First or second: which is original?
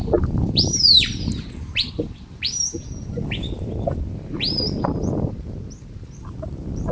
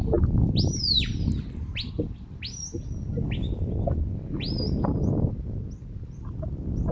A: second